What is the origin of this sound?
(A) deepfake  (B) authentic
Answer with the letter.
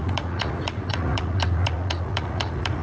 A